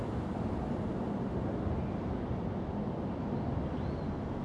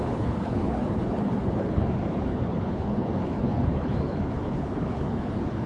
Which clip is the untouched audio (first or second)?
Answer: first